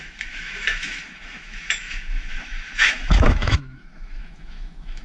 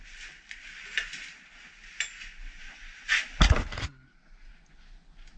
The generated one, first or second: first